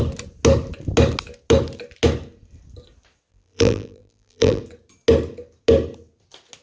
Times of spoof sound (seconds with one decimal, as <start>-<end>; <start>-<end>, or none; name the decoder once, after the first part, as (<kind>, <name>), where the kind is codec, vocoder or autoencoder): 3.3-4.6 (vocoder, BigVGAN v2)